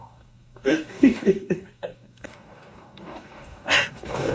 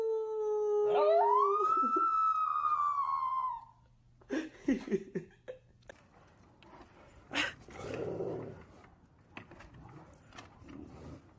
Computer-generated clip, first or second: first